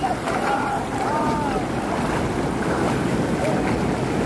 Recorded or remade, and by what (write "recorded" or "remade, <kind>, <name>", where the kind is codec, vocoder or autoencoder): recorded